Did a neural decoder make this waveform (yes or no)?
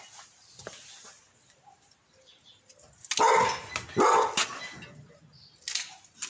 no